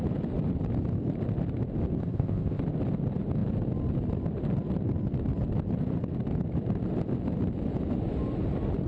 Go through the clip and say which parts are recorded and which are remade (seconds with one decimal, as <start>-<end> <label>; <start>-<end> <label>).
0.0-2.0 recorded; 2.0-2.6 remade; 2.6-8.9 recorded